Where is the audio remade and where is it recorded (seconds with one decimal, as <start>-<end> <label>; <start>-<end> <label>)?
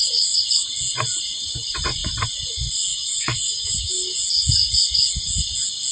0.0-2.9 recorded; 2.9-3.9 remade; 3.9-5.9 recorded